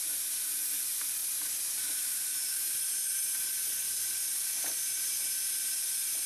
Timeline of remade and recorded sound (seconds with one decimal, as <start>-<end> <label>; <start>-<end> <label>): 0.0-6.3 recorded